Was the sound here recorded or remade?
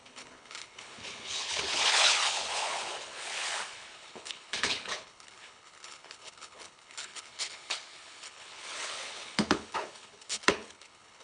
remade